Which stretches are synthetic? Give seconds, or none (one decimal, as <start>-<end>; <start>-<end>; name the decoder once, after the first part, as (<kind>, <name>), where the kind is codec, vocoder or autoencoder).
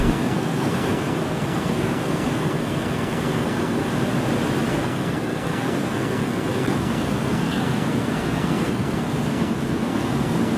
0.0-3.8 (codec, SNAC); 4.7-10.6